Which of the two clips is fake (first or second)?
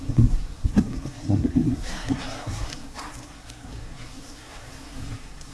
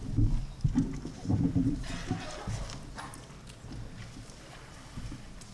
first